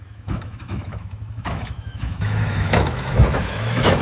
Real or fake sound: fake